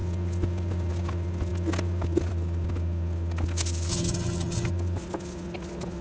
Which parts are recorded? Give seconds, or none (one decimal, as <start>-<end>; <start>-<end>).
0.0-3.9; 4.7-6.0